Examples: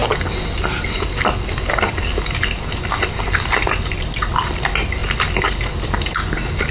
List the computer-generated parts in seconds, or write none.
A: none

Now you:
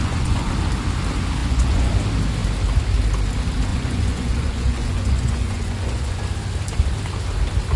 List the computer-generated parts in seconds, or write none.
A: 0.0-0.5 (vocoder, Vocos); 1.4-1.9; 3.7-6.2

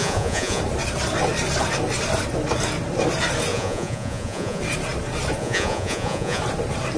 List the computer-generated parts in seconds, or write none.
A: 0.0-0.6 (vocoder, Vocos); 3.5-4.6; 5.4-6.4

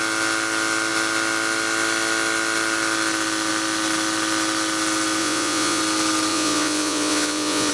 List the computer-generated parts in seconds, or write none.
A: 5.2-5.8 (vocoder, Vocos); 6.3-7.7

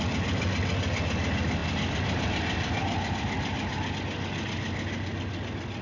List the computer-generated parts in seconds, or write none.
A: none

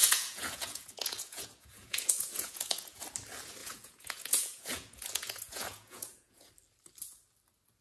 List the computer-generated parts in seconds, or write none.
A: 0.0-3.0 (vocoder, Vocos); 3.6-6.5